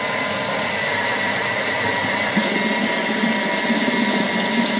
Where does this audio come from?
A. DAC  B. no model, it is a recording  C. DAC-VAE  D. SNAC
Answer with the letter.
B